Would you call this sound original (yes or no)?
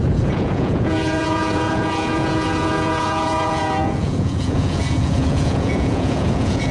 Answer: no